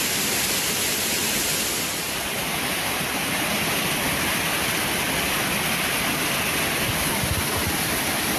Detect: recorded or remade recorded